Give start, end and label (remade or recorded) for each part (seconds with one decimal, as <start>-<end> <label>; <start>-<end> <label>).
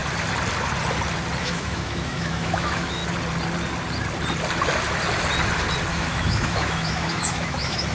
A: 0.0-1.4 recorded; 1.4-3.0 remade; 3.0-5.9 recorded; 5.9-7.9 remade